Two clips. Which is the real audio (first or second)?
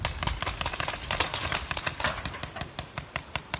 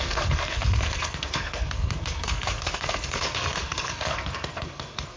first